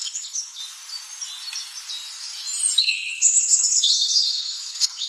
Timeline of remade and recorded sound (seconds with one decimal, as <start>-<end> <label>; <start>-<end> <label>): 0.0-0.6 remade; 0.6-2.8 recorded; 2.8-5.1 remade